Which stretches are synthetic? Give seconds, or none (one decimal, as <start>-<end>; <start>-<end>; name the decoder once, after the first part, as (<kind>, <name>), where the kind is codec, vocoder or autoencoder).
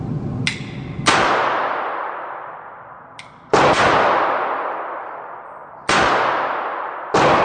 none